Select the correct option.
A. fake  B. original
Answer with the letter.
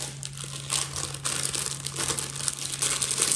B